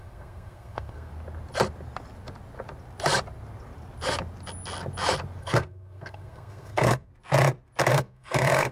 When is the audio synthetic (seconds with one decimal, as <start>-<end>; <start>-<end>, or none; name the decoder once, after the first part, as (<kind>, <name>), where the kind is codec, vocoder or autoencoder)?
0.0-1.1 (codec, SNAC); 5.4-7.1; 7.9-8.7